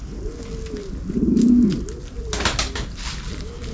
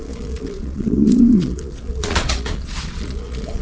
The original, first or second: first